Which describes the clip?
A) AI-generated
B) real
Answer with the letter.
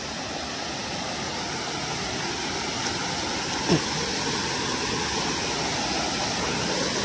B